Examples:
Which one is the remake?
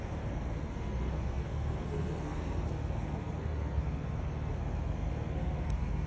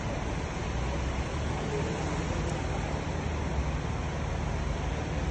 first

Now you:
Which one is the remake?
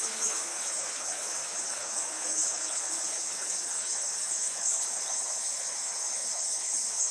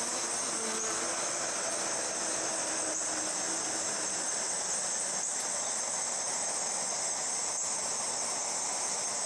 first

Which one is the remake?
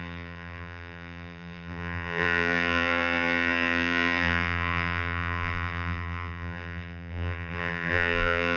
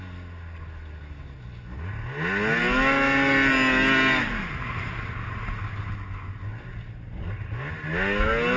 first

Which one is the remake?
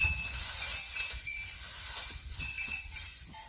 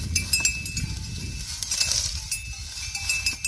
first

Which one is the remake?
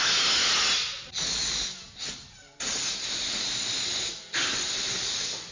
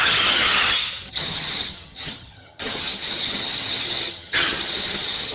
second